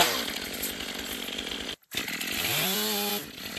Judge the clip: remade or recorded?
recorded